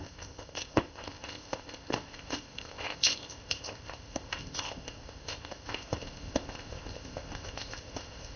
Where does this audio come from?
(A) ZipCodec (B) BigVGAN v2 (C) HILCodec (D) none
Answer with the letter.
A